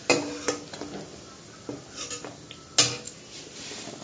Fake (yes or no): no